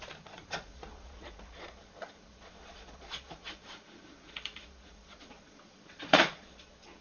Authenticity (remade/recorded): remade